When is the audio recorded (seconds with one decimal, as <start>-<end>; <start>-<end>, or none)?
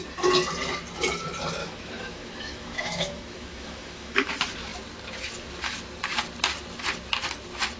0.0-1.6; 4.3-7.8